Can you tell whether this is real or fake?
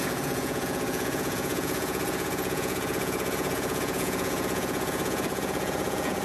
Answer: fake